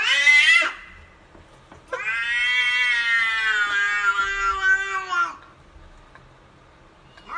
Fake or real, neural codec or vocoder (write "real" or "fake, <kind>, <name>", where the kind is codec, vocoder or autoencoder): real